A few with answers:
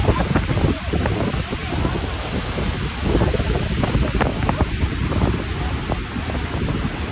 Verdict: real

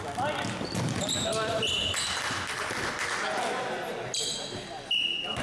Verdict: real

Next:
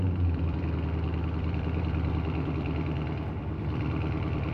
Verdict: fake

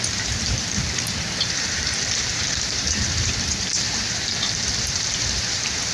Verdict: fake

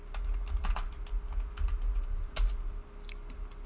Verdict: real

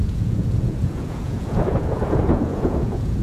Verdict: fake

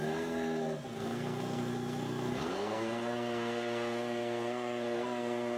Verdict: fake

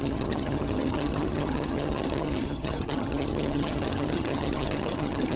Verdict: fake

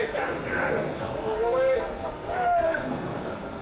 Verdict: fake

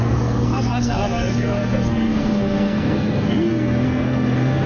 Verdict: fake